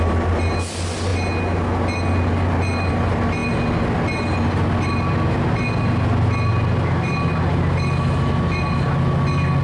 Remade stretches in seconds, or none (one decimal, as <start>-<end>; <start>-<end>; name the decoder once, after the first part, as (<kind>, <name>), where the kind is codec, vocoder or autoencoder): none